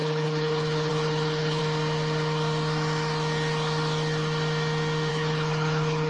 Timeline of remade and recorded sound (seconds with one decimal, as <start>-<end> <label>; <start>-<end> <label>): 0.0-1.6 remade; 1.6-5.1 recorded; 5.1-6.1 remade